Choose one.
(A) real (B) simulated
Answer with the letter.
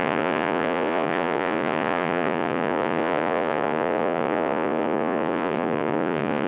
B